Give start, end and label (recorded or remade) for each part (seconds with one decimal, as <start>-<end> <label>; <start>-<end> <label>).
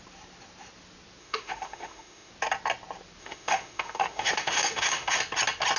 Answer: 0.0-1.2 recorded; 1.2-2.3 remade; 2.3-3.2 recorded; 3.2-5.2 remade; 5.2-5.8 recorded